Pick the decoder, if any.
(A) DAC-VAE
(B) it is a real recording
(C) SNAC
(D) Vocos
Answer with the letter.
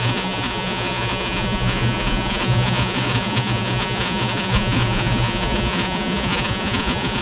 D